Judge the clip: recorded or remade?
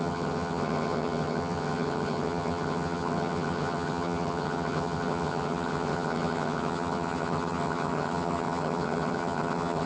remade